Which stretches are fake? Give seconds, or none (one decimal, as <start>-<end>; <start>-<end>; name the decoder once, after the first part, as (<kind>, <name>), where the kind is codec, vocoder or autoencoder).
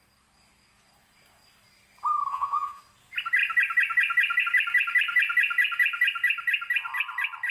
2.3-2.8 (vocoder, Vocos)